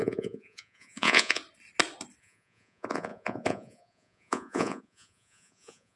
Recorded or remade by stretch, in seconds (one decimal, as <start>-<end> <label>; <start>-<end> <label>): 0.0-1.4 remade; 1.4-2.2 recorded; 2.2-6.0 remade